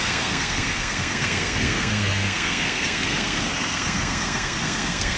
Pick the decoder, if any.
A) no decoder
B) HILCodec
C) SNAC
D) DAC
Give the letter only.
C